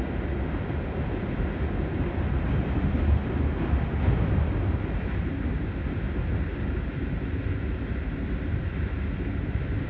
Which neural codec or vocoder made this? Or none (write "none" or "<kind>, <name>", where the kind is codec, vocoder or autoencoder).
none